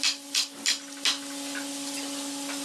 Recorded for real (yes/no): yes